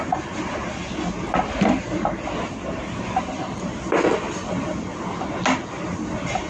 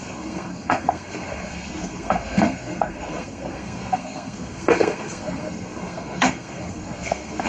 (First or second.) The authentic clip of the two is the first